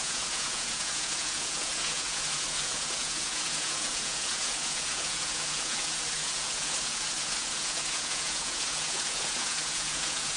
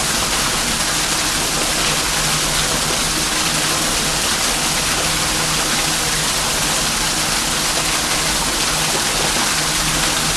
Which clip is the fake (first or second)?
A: first